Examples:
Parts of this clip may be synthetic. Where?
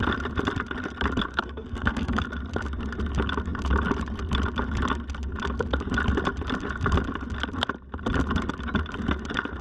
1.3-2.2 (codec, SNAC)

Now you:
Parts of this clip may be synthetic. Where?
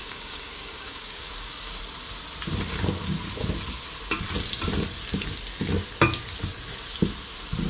0.0-1.8 (codec, DAC)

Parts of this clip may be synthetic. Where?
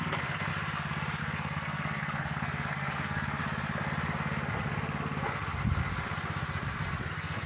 0.0-0.5 (codec, SNAC); 1.2-3.4; 7.1-7.5